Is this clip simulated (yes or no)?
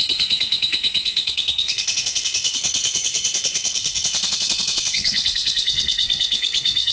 yes